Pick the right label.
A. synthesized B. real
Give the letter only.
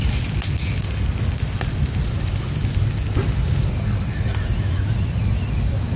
B